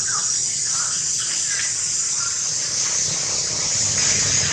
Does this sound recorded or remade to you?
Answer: recorded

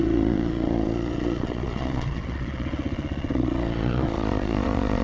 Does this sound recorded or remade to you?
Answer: remade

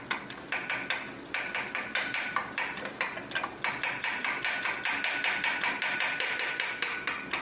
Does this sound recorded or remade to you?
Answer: recorded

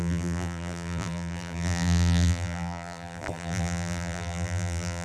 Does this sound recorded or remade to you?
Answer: remade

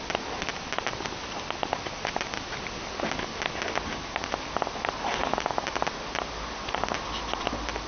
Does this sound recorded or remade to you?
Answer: recorded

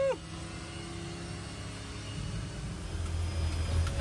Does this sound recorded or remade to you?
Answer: recorded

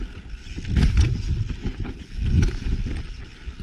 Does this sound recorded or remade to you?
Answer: recorded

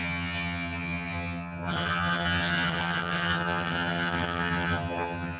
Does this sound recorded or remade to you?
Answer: remade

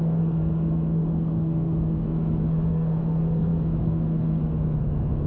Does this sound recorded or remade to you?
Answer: remade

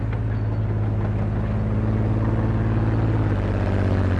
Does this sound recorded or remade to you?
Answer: recorded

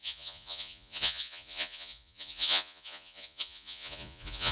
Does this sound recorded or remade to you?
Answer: remade